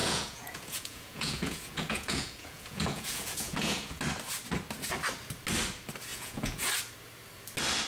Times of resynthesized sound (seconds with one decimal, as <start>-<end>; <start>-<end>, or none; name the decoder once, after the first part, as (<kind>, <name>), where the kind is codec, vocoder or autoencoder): 0.0-4.0 (vocoder, Vocos); 6.1-6.7